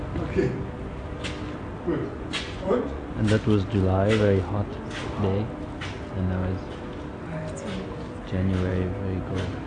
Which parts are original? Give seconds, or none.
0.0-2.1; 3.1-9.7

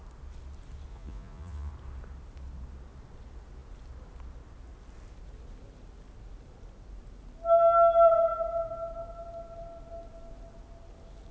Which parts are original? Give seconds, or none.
0.0-0.9; 1.7-11.3

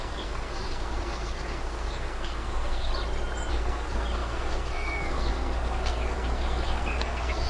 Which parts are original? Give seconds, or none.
2.9-3.5

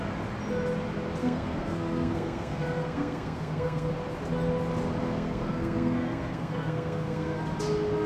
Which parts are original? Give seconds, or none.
0.0-1.2; 3.9-5.0; 7.4-8.1

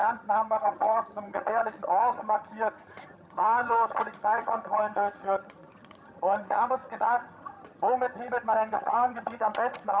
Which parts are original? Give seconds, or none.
none

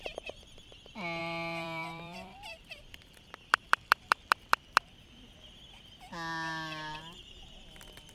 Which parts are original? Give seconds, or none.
0.0-1.2; 4.2-8.1

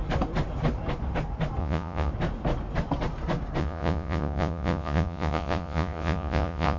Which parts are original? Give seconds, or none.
0.0-1.6; 2.1-3.6

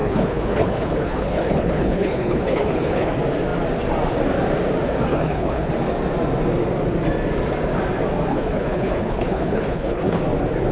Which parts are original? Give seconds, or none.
3.1-5.1; 5.7-8.3; 10.2-10.7